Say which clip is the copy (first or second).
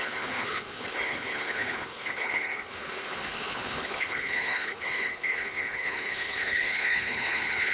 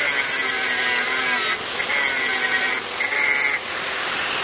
first